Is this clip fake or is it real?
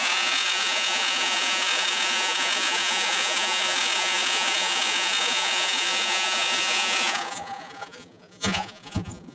fake